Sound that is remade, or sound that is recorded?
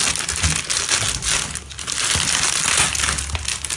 recorded